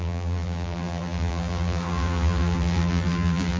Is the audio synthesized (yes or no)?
yes